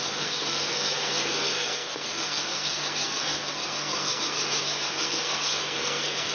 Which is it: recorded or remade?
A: remade